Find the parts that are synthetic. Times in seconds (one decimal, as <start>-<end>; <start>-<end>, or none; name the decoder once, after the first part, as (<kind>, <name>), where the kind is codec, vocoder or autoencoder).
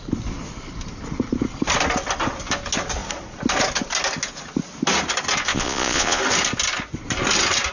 5.5-6.2 (vocoder, Vocos)